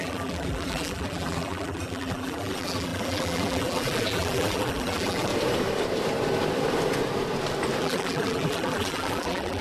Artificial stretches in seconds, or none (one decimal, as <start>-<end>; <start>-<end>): 0.0-5.3; 7.8-9.6